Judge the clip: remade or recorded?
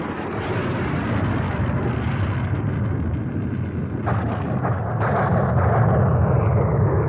recorded